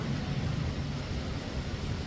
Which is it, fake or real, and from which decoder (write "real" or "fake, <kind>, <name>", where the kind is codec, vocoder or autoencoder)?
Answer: real